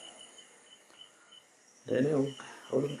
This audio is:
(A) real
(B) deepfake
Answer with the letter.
B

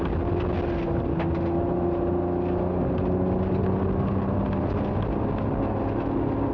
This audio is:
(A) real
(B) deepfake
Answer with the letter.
A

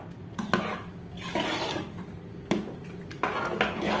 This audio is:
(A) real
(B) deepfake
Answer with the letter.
A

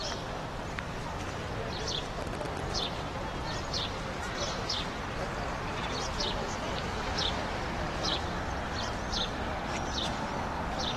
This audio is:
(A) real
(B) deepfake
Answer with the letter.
B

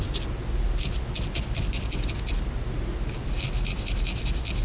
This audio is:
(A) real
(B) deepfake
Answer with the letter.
A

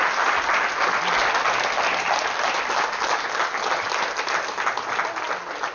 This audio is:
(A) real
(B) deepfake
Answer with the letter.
A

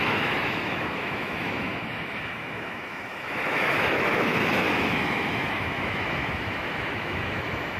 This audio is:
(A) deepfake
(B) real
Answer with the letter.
A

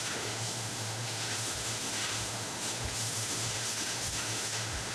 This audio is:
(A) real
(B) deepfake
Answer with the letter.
B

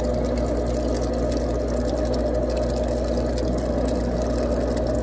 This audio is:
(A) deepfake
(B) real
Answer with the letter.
B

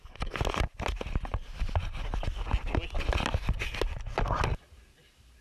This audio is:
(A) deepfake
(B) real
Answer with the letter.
B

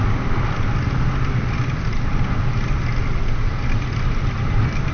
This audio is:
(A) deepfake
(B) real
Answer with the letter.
B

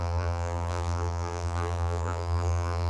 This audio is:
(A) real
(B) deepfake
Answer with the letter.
B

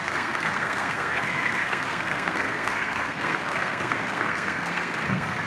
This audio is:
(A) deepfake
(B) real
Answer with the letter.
A